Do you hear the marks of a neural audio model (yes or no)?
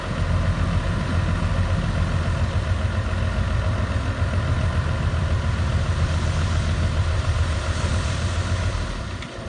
no